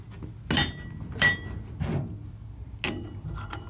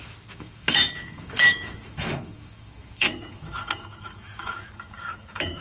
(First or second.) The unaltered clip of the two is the first